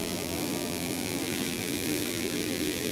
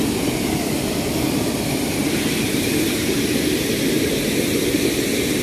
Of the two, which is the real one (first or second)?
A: second